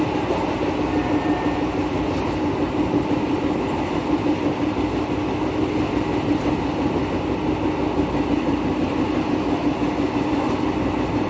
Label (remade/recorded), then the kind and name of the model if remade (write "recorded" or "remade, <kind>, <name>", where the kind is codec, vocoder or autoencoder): recorded